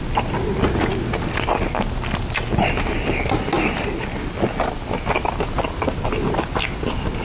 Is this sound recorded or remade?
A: recorded